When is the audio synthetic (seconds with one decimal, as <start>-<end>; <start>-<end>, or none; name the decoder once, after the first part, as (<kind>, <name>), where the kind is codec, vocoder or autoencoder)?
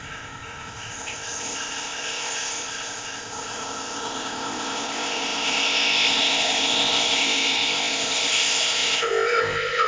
0.0-9.9 (codec, ZipCodec)